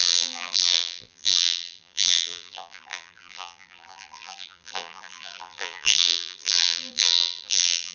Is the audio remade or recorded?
remade